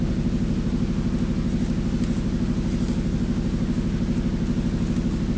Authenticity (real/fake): real